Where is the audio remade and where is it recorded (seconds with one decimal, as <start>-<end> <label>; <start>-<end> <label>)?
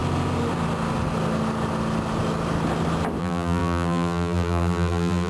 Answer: 0.0-3.2 recorded; 3.2-5.3 remade